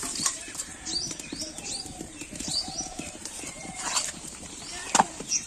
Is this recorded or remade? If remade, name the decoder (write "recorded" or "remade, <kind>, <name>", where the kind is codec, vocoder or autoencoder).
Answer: remade, vocoder, BigVGAN v2